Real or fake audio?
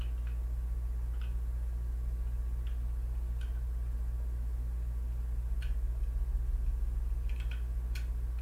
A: real